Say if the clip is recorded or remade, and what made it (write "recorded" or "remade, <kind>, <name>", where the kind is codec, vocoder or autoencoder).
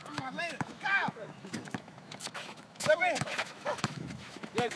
remade, autoencoder, DAC-VAE